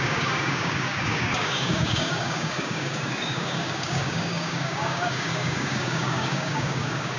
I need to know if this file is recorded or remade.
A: remade